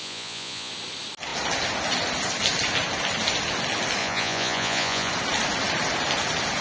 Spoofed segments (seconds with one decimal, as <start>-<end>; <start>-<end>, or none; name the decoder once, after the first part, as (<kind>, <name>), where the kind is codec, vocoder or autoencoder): 0.0-0.7 (vocoder, Vocos); 4.0-5.1